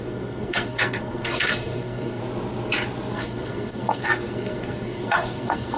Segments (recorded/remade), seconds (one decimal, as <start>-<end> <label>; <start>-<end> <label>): 0.0-2.2 remade; 2.2-3.1 recorded; 3.1-5.8 remade